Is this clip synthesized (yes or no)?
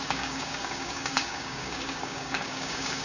yes